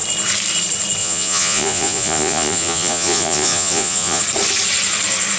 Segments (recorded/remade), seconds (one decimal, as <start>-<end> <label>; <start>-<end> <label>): 0.0-1.0 recorded; 1.0-4.2 remade; 4.2-5.4 recorded